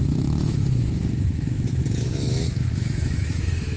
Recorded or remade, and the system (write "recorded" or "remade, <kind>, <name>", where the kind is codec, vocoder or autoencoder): remade, autoencoder, DAC-VAE